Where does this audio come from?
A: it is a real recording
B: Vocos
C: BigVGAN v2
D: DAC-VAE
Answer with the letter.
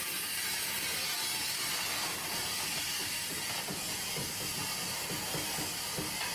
A